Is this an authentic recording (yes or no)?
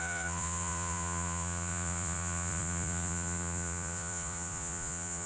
no